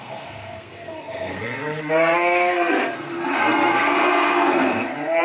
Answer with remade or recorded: remade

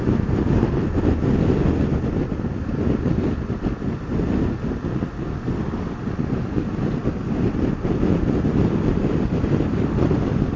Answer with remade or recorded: recorded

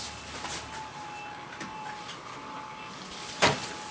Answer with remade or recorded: recorded